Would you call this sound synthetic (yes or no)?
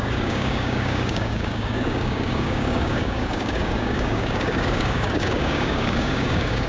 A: yes